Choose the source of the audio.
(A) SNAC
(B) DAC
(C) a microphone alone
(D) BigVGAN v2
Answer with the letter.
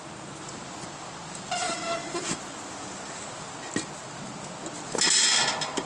C